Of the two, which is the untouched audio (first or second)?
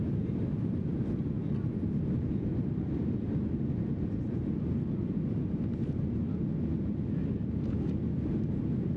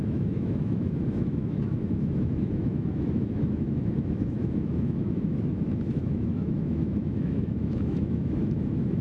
first